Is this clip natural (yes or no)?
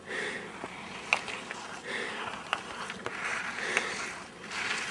yes